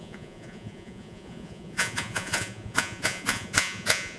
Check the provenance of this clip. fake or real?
fake